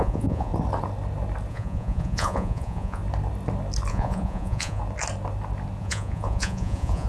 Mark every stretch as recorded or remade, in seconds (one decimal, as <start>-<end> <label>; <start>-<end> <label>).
0.0-0.5 remade; 0.5-1.5 recorded; 1.5-3.0 remade; 3.0-3.9 recorded; 3.9-4.8 remade; 4.8-5.8 recorded; 5.8-7.1 remade